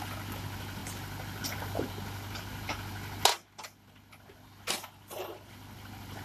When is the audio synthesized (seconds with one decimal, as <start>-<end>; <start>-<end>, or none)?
none